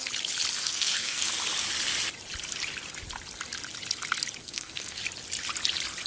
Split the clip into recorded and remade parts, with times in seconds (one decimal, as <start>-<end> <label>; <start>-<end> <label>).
0.0-0.6 recorded; 0.6-1.3 remade; 1.3-4.4 recorded; 4.4-5.0 remade; 5.0-6.1 recorded